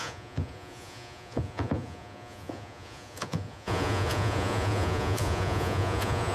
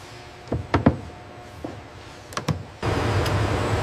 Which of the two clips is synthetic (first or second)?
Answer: first